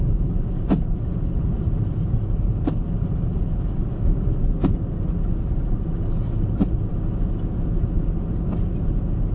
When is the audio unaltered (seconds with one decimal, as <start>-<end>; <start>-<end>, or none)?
0.0-9.3